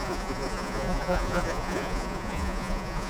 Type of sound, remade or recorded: remade